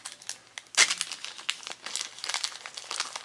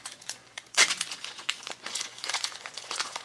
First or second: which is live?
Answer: first